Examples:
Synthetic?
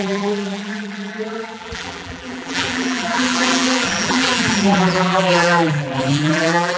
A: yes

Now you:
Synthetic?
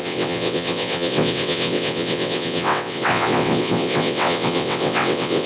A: yes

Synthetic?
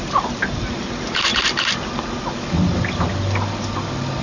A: no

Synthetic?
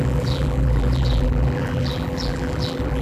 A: yes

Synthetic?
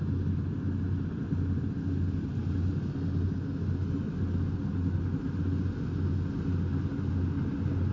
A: no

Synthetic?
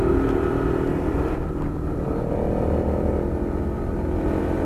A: no